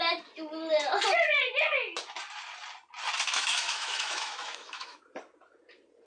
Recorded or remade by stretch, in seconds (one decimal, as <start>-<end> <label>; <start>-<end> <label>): 0.0-3.3 recorded; 3.3-5.0 remade; 5.0-6.1 recorded